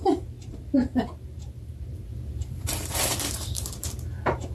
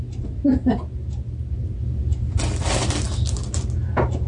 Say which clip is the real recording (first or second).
second